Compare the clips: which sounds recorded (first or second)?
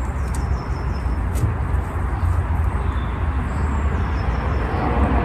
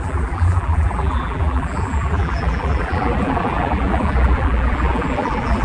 first